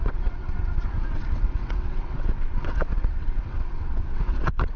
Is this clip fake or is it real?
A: fake